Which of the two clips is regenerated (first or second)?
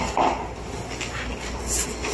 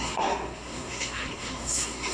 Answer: second